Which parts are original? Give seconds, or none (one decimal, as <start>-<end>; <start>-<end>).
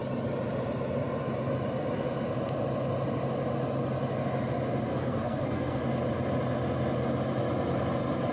0.0-4.9; 5.8-8.3